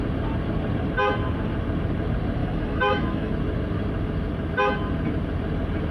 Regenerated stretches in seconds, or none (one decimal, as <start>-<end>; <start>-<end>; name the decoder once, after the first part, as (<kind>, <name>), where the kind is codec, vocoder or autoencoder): 2.4-3.3 (autoencoder, DAC-VAE)